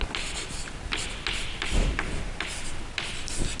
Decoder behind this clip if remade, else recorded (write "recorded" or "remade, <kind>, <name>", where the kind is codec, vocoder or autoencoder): recorded